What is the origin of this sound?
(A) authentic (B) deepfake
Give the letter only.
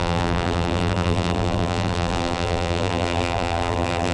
B